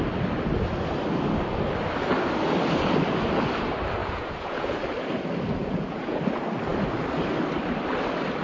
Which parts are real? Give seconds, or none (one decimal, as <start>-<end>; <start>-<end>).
0.0-4.0; 4.8-5.6; 6.2-8.4